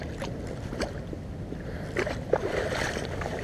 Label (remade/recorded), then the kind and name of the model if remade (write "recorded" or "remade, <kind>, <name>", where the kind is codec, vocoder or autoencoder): recorded